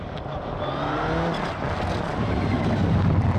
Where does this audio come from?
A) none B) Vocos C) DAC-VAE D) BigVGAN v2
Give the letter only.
A